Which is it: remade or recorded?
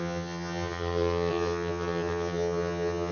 remade